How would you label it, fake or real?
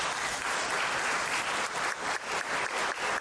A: real